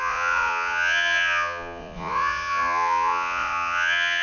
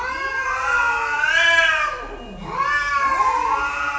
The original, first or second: second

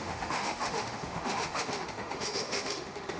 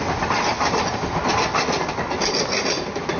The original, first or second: second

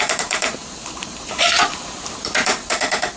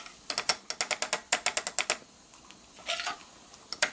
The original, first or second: second